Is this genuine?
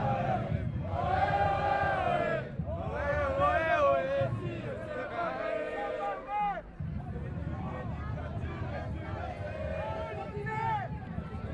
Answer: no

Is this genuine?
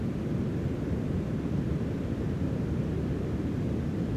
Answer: yes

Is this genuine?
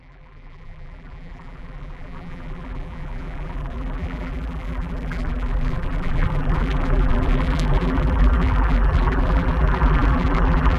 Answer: no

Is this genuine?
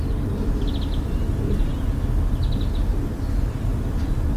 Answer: yes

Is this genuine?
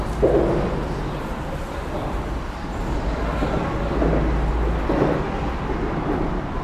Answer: yes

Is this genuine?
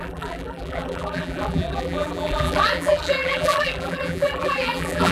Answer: no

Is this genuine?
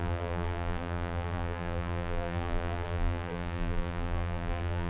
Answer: no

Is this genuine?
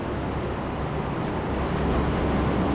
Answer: yes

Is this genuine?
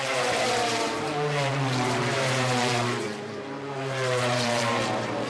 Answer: no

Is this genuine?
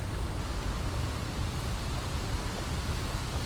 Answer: yes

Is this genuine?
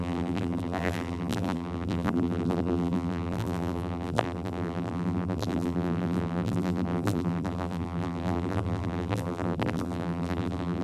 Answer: no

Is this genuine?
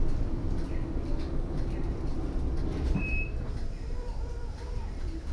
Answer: no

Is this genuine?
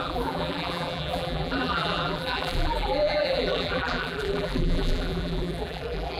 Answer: no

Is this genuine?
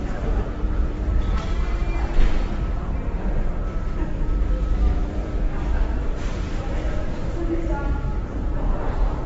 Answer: no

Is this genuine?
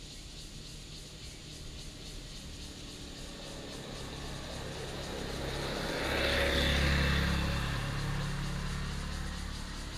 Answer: yes